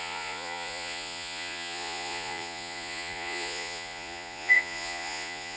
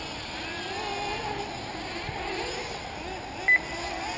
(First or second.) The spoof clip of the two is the first